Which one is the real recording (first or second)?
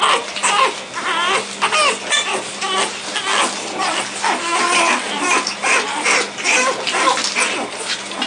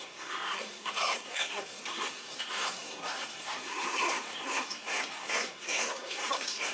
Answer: first